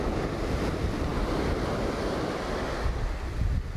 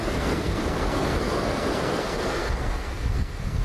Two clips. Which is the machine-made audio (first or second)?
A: second